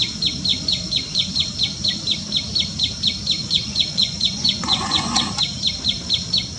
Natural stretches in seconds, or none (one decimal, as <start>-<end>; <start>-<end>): 0.0-0.5; 1.3-3.4; 5.2-6.6